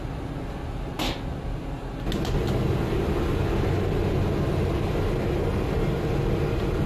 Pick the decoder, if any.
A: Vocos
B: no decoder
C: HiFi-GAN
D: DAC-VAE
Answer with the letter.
B